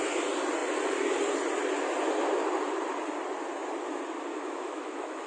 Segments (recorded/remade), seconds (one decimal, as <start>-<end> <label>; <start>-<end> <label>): 0.0-4.3 recorded; 4.3-5.3 remade